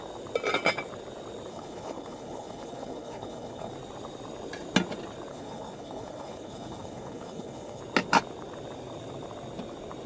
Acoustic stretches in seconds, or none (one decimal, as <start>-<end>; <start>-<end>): 0.0-1.5; 3.7-5.3; 7.8-10.1